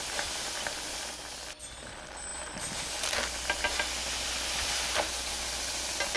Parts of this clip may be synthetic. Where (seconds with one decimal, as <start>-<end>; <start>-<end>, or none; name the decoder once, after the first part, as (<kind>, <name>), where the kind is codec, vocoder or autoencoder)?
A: none